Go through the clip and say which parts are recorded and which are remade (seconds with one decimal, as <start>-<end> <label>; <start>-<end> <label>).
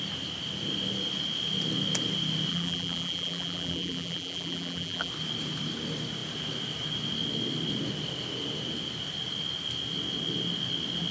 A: 0.0-2.5 recorded; 2.5-5.1 remade; 5.1-11.1 recorded